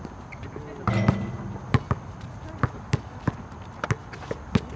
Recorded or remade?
recorded